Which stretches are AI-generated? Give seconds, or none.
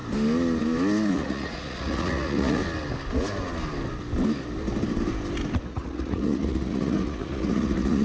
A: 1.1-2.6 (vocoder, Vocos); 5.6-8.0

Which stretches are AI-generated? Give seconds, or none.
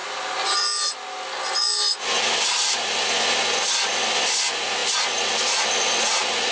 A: none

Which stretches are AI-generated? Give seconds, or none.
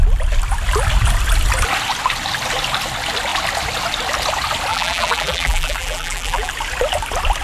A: 4.7-6.5 (vocoder, BigVGAN v2)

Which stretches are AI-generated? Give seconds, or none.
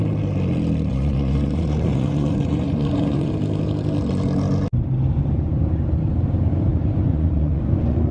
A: 0.9-3.3 (vocoder, Vocos); 6.7-8.1